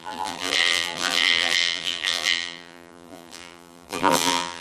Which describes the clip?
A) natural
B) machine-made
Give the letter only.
B